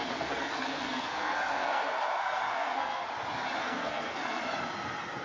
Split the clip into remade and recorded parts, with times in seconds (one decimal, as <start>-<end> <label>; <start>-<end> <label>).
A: 0.0-3.1 remade; 3.1-3.6 recorded; 3.6-4.4 remade; 4.4-5.2 recorded